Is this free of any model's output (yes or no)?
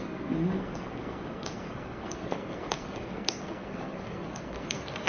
no